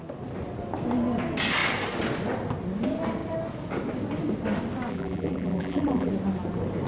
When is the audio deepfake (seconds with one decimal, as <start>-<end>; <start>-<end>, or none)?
4.9-6.1